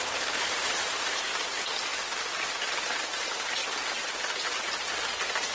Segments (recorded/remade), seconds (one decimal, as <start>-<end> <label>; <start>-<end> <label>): 0.0-1.9 remade; 1.9-2.9 recorded; 2.9-3.6 remade; 3.6-5.5 recorded

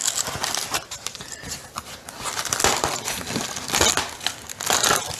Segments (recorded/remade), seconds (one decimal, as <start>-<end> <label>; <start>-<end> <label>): 0.0-5.2 recorded

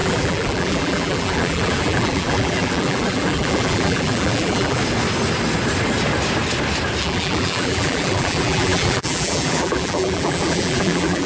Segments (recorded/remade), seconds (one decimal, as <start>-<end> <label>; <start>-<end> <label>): 0.0-4.8 remade; 4.8-7.0 recorded; 7.0-11.3 remade

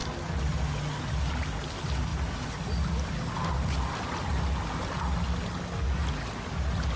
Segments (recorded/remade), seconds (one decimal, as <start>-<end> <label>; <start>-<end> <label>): 0.0-7.0 recorded

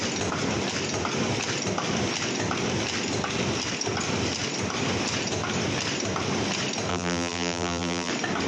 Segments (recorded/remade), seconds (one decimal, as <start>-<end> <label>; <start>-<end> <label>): 0.0-6.9 recorded; 6.9-8.1 remade; 8.1-8.5 recorded

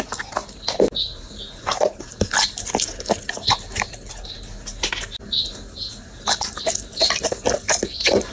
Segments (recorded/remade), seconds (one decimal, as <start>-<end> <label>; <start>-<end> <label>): 0.0-8.3 recorded